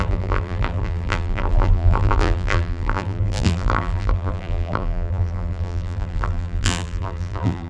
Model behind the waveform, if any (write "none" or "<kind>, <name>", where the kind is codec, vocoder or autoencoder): vocoder, BigVGAN v2